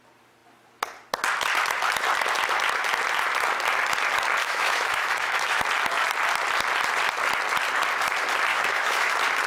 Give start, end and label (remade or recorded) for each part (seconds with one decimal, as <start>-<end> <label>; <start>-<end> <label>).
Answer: 0.0-4.4 recorded; 4.4-5.6 remade; 5.6-8.5 recorded; 8.5-9.1 remade; 9.1-9.5 recorded